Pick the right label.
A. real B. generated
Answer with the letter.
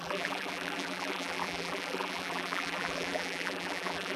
B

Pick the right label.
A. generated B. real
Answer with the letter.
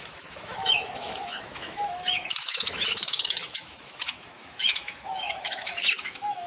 A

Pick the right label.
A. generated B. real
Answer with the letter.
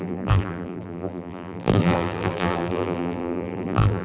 A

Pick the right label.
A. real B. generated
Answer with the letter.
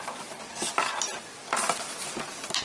A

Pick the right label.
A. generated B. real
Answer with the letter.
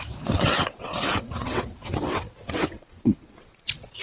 A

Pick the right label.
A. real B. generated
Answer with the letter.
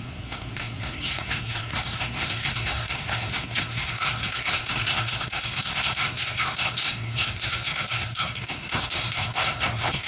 B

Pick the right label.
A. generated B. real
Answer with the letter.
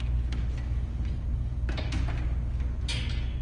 B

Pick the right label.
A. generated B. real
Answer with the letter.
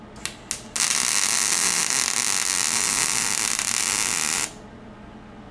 B